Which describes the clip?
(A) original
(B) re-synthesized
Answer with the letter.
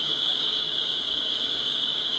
B